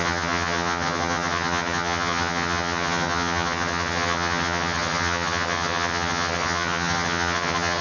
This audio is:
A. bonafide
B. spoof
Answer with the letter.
B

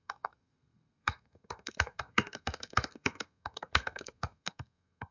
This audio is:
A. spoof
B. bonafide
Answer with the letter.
A